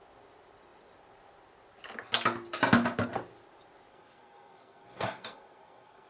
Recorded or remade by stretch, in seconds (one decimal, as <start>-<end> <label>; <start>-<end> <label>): 0.0-3.9 recorded; 3.9-6.1 remade